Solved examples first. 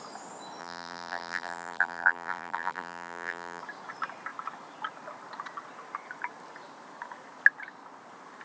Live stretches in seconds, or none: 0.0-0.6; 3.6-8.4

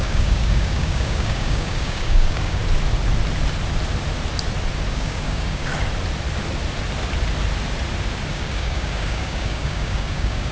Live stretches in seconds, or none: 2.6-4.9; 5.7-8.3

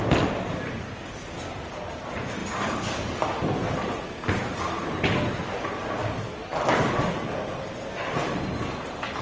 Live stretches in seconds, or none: 0.0-9.2

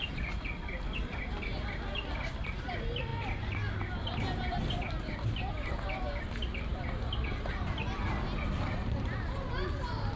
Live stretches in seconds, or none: 0.0-10.2

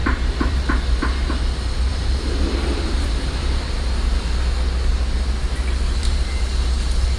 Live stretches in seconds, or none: 0.6-1.9; 4.4-6.0; 6.5-7.2

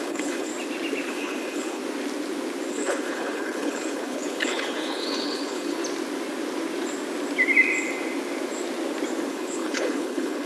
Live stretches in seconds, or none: 0.5-1.1; 1.8-2.7; 5.8-9.3

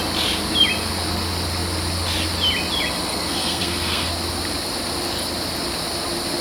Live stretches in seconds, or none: 0.0-3.1; 4.1-6.4

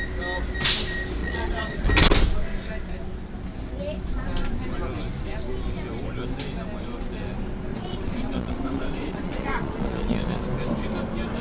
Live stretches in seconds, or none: 0.0-1.2; 1.9-7.7; 10.4-11.4